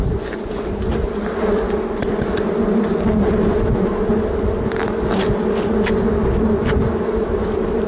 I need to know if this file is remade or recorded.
recorded